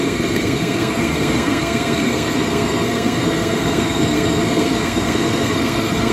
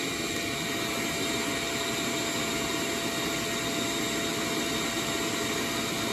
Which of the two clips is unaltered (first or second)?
second